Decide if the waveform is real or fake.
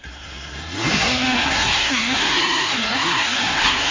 fake